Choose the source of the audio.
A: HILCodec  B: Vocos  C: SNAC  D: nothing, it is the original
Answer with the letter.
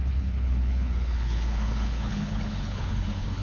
A